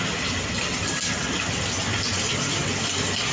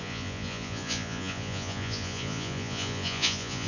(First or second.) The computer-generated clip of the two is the second